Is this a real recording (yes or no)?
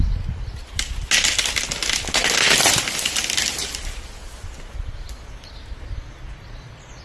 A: yes